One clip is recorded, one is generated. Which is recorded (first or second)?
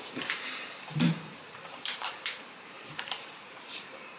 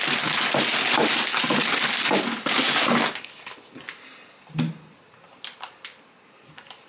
second